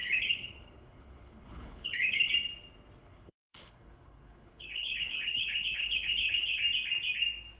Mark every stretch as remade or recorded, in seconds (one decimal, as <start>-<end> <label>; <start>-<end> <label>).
0.0-2.3 remade; 2.3-3.0 recorded; 3.0-6.6 remade; 6.6-7.6 recorded